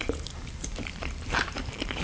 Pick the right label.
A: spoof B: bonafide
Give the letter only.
A